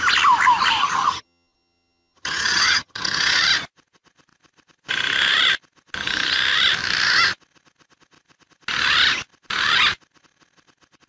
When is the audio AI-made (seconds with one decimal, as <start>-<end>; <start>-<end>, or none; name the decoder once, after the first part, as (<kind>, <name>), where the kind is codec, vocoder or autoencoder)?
0.8-3.4 (vocoder, HiFi-GAN)